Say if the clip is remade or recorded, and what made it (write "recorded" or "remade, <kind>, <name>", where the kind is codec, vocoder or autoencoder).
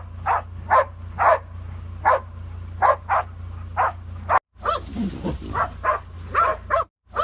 recorded